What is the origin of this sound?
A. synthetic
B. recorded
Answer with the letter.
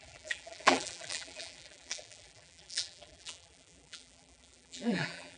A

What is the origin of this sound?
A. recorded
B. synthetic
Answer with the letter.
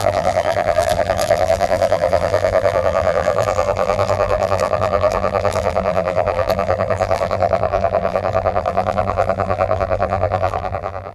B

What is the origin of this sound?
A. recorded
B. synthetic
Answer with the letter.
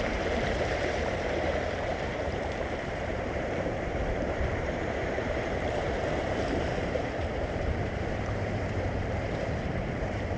B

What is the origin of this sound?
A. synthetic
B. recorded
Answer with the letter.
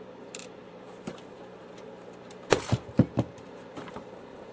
A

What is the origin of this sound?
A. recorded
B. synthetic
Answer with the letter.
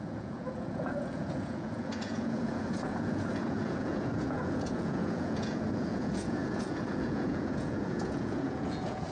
B